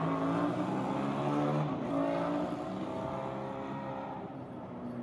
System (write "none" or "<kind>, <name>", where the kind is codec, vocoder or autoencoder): none